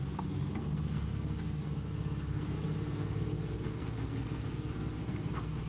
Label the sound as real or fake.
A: fake